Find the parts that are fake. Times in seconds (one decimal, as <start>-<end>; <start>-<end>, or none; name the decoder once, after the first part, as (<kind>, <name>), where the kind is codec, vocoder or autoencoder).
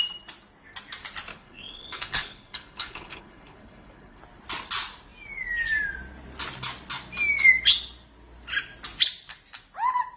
1.3-4.2 (codec, HILCodec)